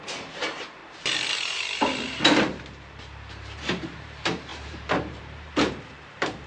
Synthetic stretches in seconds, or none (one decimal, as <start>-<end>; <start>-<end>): 0.0-0.8; 3.6-6.5